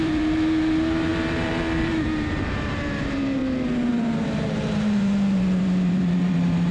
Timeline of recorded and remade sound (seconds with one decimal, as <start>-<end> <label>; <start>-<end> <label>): 0.0-3.4 remade; 3.4-3.9 recorded; 3.9-6.7 remade